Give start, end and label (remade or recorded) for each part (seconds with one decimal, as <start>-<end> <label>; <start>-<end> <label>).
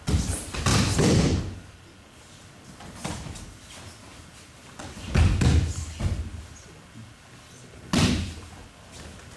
0.0-0.7 recorded; 0.7-1.4 remade; 1.4-9.4 recorded